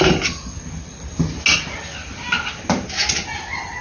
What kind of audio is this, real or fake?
real